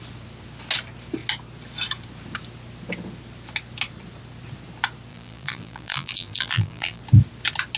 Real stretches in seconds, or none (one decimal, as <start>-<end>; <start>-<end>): 0.0-5.1; 7.0-7.8